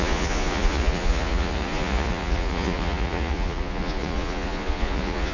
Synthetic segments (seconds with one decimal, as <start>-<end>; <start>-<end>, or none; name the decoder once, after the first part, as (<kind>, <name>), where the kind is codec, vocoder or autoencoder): 0.0-5.3 (vocoder, Vocos)